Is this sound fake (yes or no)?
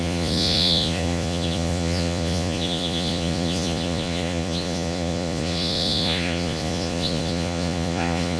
yes